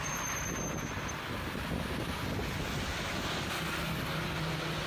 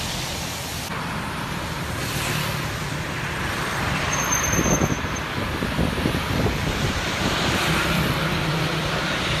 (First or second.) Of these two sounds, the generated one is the second